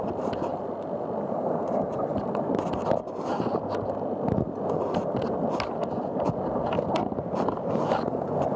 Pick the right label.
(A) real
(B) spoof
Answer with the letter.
A